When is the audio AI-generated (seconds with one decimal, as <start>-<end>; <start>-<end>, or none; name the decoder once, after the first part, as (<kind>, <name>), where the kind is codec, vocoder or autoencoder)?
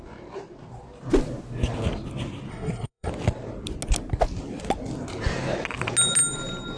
2.5-3.1 (codec, SNAC)